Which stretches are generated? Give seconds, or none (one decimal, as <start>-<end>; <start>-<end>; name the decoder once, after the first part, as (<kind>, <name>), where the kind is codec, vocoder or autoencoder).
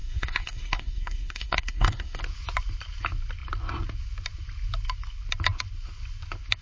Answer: 0.0-2.2 (codec, SNAC)